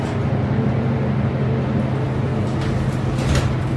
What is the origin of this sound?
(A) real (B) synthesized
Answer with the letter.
A